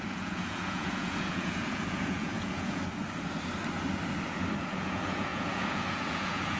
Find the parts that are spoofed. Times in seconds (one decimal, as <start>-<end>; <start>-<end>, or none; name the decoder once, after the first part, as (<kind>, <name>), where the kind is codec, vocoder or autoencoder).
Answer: 0.0-2.8 (vocoder, Vocos); 4.6-6.6